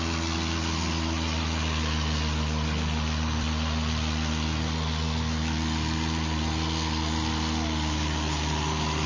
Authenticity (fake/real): real